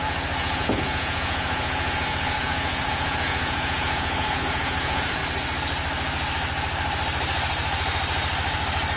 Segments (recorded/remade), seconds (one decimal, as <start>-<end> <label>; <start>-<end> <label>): 0.0-5.2 remade; 5.2-9.0 recorded